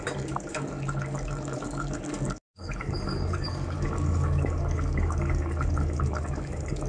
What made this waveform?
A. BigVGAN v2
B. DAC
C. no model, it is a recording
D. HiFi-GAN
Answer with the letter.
B